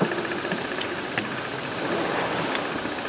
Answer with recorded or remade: recorded